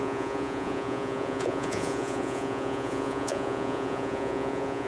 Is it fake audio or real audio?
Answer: fake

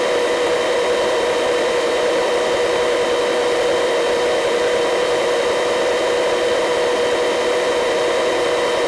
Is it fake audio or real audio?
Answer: fake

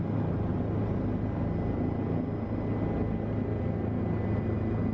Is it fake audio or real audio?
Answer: real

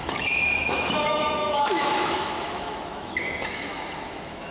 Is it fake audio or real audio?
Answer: fake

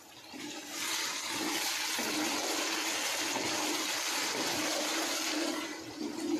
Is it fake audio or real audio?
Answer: real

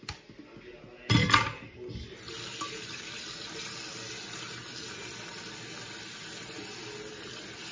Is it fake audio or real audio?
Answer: real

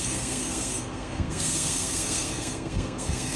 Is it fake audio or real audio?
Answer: fake